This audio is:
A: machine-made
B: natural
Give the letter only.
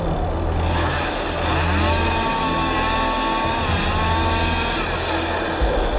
B